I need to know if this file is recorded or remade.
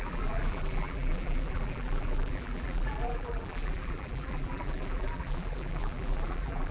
remade